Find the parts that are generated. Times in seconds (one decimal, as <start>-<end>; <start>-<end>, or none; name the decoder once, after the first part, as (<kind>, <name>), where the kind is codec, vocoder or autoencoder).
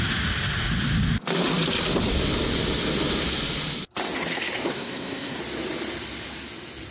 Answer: 4.7-5.4 (codec, SNAC)